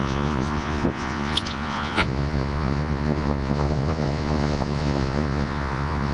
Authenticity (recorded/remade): remade